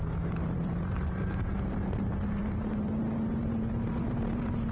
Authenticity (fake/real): fake